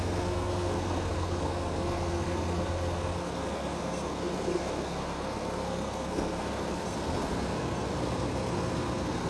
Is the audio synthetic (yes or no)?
yes